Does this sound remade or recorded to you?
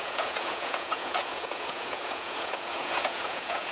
remade